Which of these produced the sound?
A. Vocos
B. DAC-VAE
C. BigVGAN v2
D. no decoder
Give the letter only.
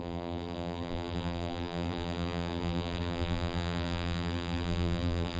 C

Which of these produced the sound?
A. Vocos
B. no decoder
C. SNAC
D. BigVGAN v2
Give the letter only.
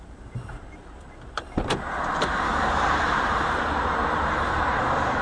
D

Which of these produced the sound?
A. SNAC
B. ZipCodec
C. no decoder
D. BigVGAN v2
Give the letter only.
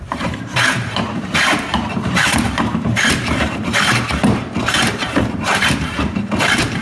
D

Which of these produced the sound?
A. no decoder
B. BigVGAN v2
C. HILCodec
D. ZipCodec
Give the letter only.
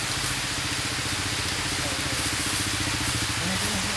A